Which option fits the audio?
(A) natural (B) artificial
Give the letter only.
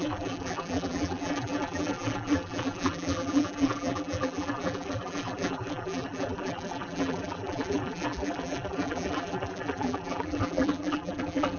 B